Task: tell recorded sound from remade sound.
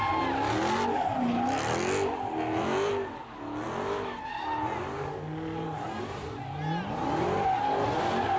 recorded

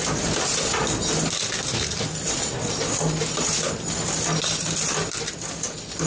recorded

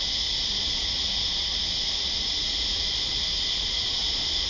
recorded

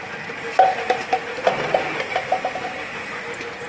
recorded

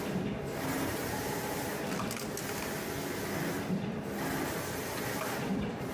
recorded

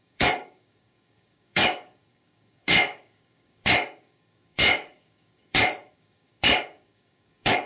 remade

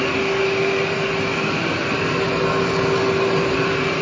recorded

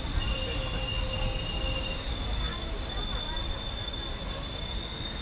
recorded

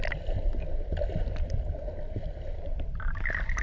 recorded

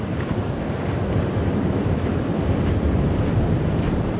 recorded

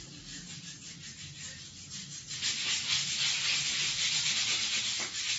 recorded